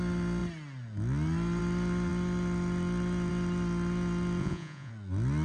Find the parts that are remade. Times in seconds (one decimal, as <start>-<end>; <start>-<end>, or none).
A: 4.4-4.9